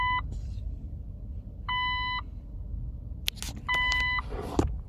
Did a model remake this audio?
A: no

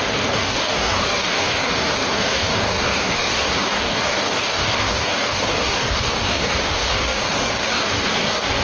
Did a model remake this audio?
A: yes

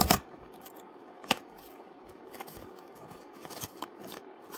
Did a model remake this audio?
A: yes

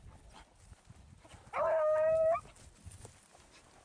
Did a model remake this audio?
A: no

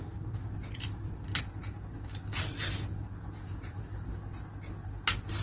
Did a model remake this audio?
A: no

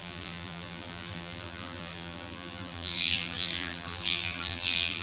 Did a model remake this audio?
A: yes